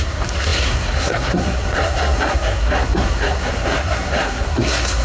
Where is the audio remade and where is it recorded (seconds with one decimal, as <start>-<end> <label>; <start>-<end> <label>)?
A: 0.0-5.0 remade